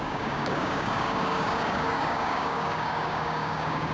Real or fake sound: fake